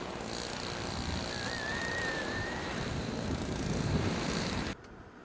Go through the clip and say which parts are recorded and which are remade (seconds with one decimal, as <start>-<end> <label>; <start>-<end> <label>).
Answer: 0.0-1.7 recorded; 1.7-4.8 remade; 4.8-5.2 recorded